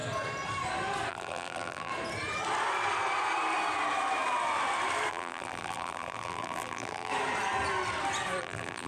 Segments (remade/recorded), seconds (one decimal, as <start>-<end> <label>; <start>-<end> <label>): 0.0-1.1 recorded; 1.1-1.9 remade; 1.9-5.1 recorded; 5.1-7.1 remade; 7.1-8.4 recorded; 8.4-8.9 remade